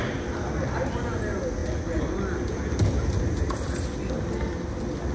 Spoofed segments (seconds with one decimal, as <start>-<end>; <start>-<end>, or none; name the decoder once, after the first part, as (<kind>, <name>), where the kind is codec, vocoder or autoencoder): none